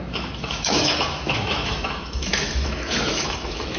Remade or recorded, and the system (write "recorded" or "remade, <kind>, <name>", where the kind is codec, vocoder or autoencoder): remade, autoencoder, DAC-VAE